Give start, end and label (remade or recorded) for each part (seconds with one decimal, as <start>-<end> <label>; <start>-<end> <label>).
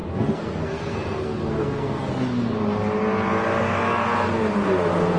0.0-2.1 remade; 2.1-5.2 recorded